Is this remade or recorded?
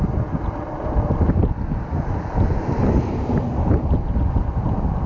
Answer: recorded